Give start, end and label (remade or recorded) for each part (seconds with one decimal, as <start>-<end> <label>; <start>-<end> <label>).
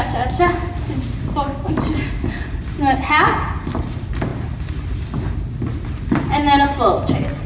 0.0-7.5 recorded